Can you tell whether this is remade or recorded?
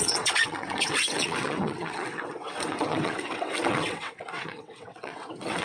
remade